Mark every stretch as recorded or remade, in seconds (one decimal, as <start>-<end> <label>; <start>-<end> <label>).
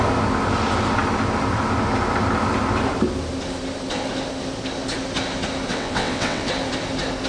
0.0-5.7 recorded; 5.7-6.5 remade; 6.5-7.3 recorded